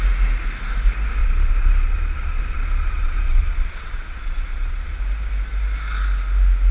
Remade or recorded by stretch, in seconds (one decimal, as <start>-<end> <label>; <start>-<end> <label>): 0.0-1.2 recorded; 1.2-5.0 remade; 5.0-6.7 recorded